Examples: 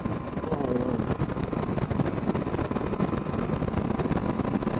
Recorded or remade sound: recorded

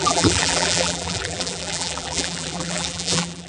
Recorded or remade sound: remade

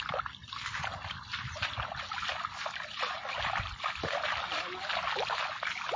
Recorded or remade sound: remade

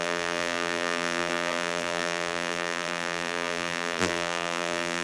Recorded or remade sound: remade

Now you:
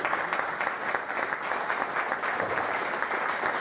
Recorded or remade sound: recorded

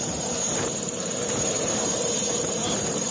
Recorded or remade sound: remade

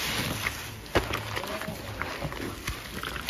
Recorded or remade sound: recorded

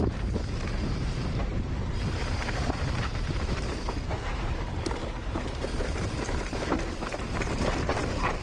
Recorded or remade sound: remade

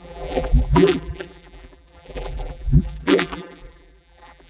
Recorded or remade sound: remade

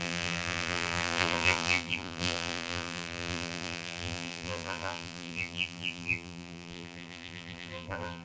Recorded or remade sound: remade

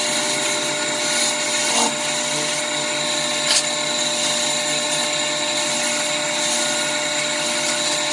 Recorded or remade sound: recorded